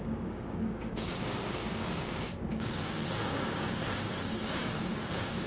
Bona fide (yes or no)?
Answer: no